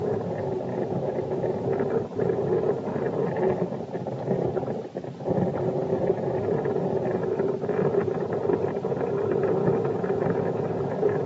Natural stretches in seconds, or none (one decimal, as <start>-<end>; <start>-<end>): 0.0-0.7; 1.6-9.6